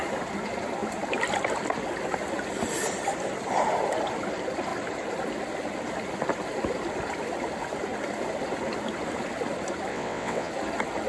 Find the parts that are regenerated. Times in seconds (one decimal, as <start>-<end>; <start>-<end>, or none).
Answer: 9.9-10.5